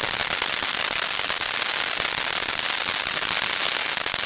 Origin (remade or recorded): recorded